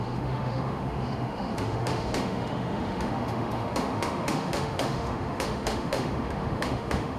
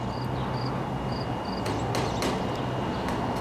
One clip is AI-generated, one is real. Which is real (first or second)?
second